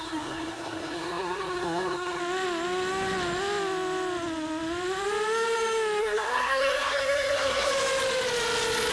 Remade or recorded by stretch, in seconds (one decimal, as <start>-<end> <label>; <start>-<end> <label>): 0.0-2.2 remade; 2.2-6.0 recorded; 6.0-7.7 remade; 7.7-8.9 recorded